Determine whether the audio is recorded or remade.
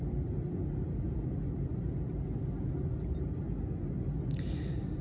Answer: recorded